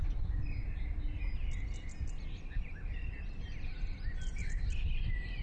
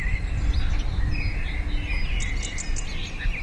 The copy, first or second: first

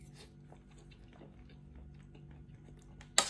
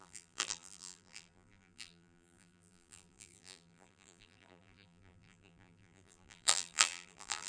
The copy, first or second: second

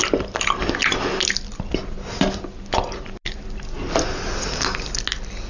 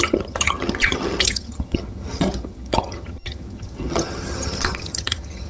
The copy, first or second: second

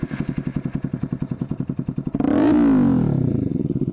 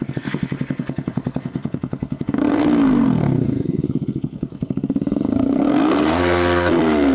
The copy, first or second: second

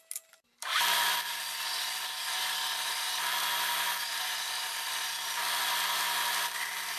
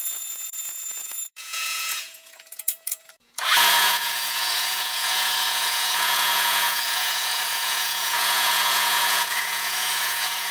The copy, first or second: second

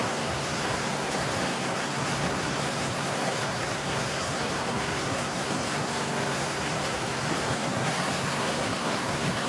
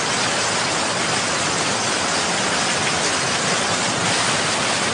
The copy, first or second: first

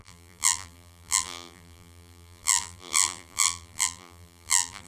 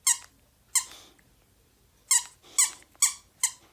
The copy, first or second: first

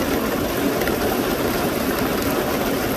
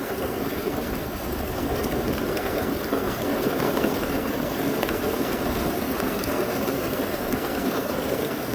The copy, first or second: second